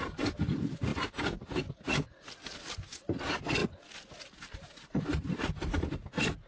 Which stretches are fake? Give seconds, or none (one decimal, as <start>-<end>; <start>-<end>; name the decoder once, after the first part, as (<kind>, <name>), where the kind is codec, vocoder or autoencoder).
none